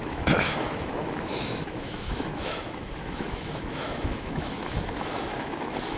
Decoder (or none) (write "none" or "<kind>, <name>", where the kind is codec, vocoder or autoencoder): autoencoder, DAC-VAE